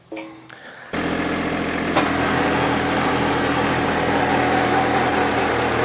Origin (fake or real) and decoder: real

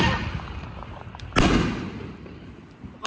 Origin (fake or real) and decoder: real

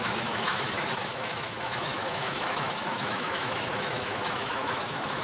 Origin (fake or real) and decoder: fake, autoencoder, DAC-VAE